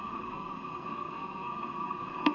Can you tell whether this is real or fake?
fake